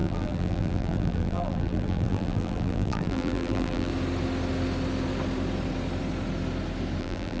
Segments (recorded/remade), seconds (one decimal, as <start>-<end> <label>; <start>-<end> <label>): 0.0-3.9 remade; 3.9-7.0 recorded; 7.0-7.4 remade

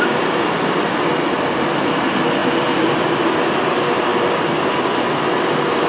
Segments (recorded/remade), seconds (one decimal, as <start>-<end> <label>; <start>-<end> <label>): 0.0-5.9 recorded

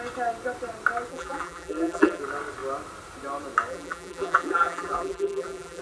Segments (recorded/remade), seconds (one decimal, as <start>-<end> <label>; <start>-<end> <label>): 0.0-1.1 recorded; 1.1-2.2 remade; 2.2-3.7 recorded; 3.7-5.8 remade